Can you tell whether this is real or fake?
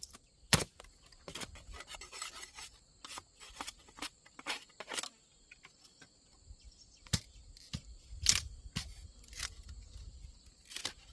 real